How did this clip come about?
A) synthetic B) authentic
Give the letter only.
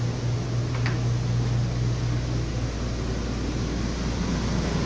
B